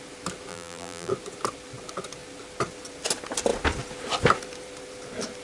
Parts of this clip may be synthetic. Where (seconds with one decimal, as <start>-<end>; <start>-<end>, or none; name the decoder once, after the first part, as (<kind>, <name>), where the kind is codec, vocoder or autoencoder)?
0.5-1.1 (vocoder, BigVGAN v2)